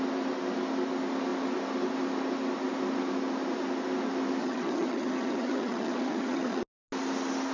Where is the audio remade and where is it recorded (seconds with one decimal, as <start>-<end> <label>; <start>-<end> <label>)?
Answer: 0.0-4.4 recorded; 4.4-6.6 remade; 6.6-7.5 recorded